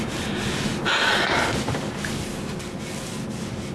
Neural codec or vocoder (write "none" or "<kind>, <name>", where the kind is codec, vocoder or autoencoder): none